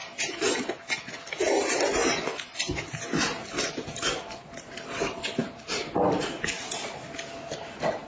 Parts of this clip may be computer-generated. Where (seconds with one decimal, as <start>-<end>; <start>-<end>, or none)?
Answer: none